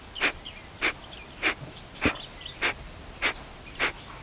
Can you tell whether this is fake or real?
real